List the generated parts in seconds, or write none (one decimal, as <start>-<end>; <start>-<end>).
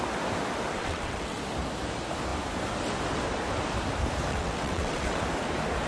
0.8-1.4; 4.3-5.2